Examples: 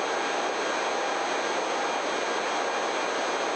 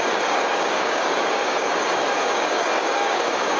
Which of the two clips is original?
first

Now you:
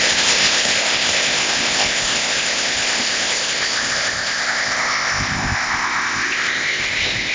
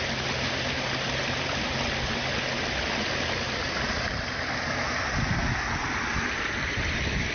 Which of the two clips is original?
second